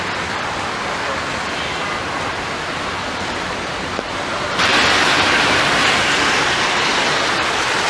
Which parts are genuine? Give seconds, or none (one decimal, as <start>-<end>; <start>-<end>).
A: 2.0-2.6; 4.7-5.4

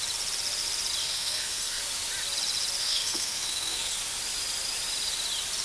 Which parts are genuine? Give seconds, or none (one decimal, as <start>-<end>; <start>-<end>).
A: 0.0-1.0; 1.8-2.8; 4.0-5.6

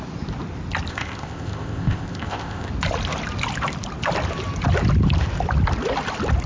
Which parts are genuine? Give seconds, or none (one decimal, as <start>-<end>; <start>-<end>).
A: 0.0-0.9; 2.7-6.5